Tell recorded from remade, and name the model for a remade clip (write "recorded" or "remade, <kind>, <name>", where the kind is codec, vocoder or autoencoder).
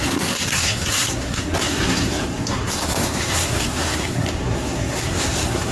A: remade, codec, SNAC